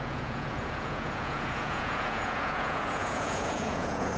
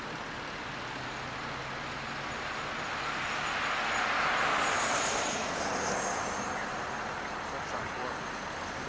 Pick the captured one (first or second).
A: second